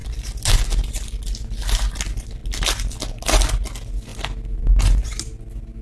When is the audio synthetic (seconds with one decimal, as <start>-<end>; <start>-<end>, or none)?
none